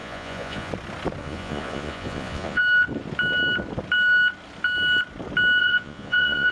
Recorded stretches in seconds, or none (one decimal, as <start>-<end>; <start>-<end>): 0.7-1.2; 2.6-5.6